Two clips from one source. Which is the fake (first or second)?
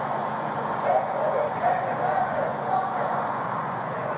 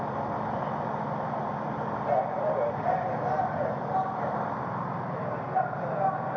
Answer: first